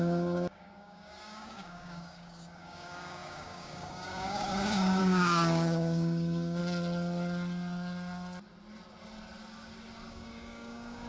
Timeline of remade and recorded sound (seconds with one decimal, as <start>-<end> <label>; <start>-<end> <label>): 0.0-6.6 remade; 6.6-10.1 recorded; 10.1-11.1 remade